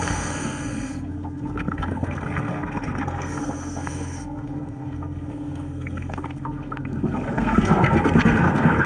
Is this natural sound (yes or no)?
no